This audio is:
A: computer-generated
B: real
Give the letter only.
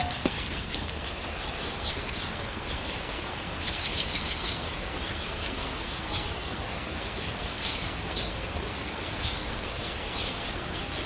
A